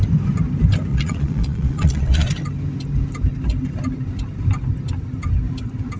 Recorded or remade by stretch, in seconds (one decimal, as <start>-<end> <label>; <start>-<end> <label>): 0.0-0.9 recorded; 0.9-2.3 remade; 2.3-6.0 recorded